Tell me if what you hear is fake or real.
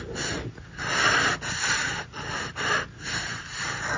real